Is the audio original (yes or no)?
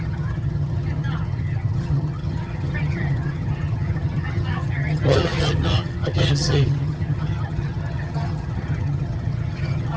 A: no